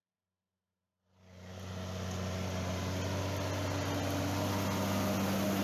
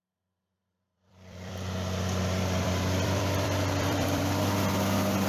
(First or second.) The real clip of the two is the first